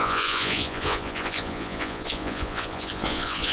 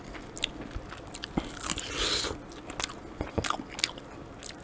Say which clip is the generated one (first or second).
first